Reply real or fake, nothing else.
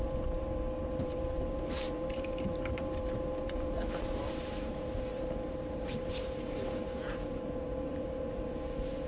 fake